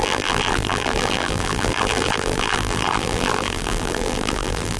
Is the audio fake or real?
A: fake